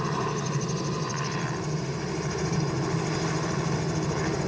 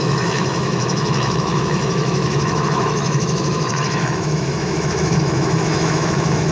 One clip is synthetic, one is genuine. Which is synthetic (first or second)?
second